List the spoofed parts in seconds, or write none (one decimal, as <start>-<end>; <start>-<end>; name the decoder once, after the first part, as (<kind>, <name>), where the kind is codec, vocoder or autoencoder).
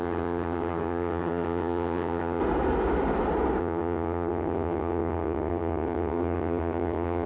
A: 0.0-2.4 (vocoder, HiFi-GAN); 3.6-7.3